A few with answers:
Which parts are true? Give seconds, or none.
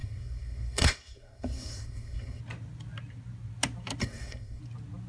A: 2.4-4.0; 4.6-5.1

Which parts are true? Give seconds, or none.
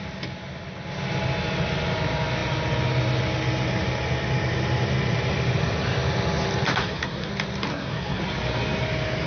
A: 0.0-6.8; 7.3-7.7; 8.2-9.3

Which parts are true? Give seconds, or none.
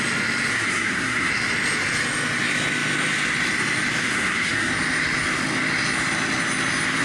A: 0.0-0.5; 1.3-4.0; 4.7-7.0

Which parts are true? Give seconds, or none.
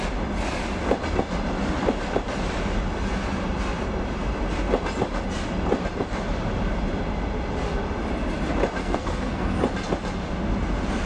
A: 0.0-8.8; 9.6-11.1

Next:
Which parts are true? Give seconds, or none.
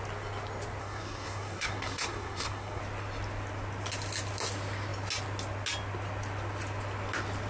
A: 0.0-0.8; 2.8-7.5